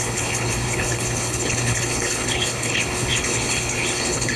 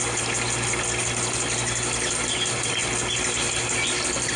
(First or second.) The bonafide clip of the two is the second